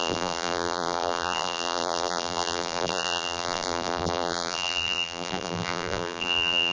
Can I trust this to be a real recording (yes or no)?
no